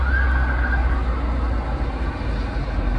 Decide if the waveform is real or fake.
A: real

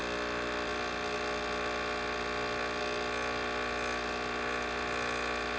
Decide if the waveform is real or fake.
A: real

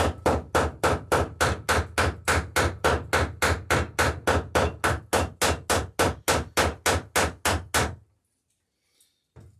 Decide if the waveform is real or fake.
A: real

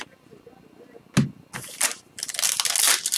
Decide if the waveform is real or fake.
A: real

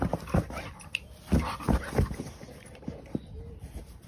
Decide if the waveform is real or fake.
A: real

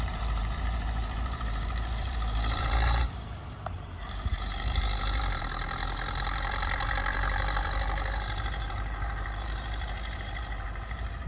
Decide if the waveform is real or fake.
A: fake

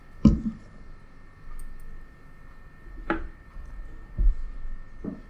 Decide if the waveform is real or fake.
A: real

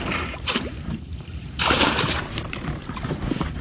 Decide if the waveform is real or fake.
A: fake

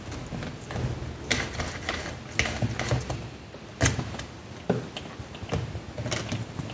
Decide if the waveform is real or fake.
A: real